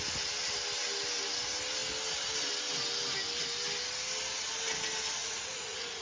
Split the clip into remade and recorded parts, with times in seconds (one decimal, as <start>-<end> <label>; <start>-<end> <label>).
0.0-5.2 recorded; 5.2-6.0 remade